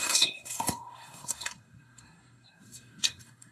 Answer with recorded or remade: remade